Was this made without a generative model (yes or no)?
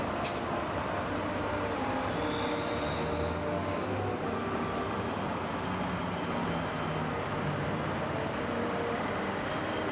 yes